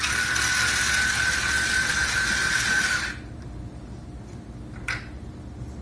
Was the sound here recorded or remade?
recorded